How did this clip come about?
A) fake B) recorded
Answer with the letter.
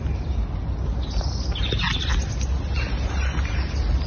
B